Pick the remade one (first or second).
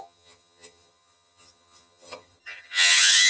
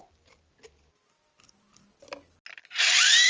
first